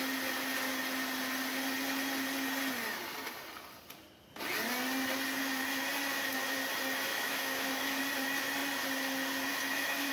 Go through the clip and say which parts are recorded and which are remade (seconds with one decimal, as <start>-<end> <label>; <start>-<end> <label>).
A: 0.0-7.1 recorded; 7.1-8.0 remade; 8.0-9.5 recorded; 9.5-10.1 remade